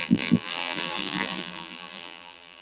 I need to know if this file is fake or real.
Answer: fake